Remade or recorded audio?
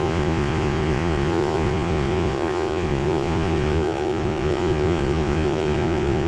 remade